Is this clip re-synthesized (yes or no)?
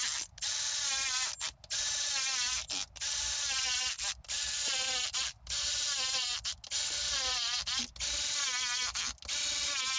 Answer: no